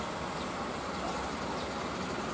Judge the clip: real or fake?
real